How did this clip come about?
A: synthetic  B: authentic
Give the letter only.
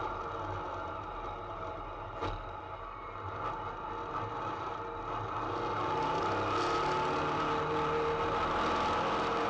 B